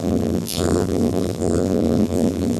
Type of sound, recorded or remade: remade